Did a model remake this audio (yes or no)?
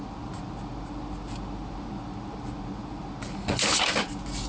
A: no